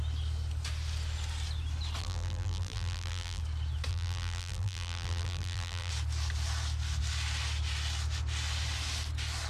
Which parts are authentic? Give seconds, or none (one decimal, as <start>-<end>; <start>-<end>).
0.0-2.0; 3.4-3.9; 5.9-9.5